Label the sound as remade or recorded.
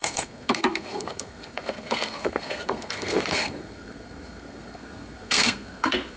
remade